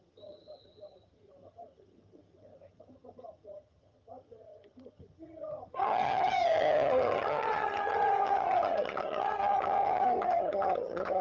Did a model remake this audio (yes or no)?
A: yes